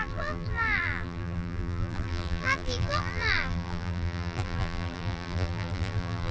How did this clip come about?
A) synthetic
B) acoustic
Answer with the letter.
A